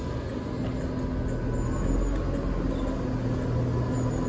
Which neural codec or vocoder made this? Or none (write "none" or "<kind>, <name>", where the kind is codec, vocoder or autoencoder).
none